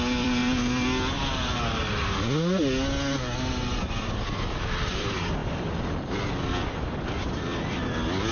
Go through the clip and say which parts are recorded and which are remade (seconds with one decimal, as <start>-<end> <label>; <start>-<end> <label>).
0.0-0.4 remade; 0.4-3.8 recorded; 3.8-8.3 remade